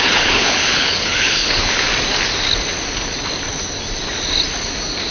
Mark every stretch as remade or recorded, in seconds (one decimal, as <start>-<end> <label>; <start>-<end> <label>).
0.0-1.9 remade; 1.9-5.1 recorded